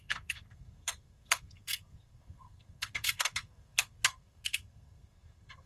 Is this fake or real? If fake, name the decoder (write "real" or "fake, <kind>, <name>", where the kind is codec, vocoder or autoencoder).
fake, codec, SNAC